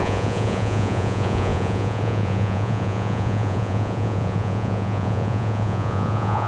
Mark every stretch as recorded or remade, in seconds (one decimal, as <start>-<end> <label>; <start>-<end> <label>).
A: 0.0-6.5 remade